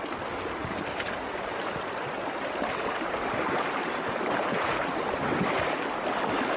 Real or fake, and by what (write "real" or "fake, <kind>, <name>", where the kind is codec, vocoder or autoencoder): real